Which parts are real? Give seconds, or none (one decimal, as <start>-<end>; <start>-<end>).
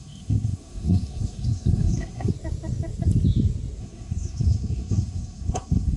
2.3-3.8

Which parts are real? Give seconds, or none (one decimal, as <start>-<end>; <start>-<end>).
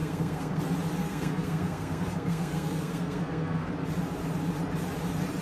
0.6-1.0; 3.7-5.4